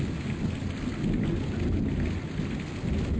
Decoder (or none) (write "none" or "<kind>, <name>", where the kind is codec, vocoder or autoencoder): none